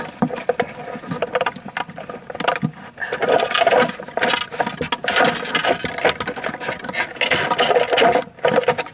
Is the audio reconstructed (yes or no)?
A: no